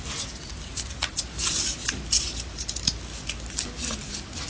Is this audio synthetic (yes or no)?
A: no